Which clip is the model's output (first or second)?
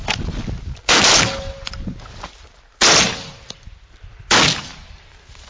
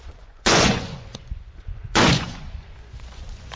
second